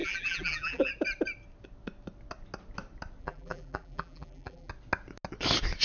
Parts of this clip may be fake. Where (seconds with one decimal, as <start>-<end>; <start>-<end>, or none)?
0.0-0.9; 3.2-4.7